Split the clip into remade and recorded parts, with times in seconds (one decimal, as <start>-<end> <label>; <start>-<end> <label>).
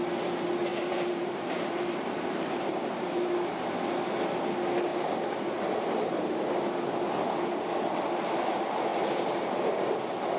0.0-0.7 recorded; 0.7-3.5 remade; 3.5-8.9 recorded; 8.9-9.9 remade; 9.9-10.4 recorded